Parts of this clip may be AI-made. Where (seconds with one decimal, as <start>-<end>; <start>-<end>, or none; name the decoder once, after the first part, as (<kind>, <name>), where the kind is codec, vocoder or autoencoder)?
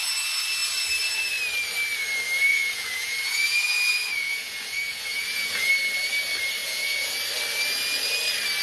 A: 2.5-5.7 (vocoder, Vocos); 6.6-7.1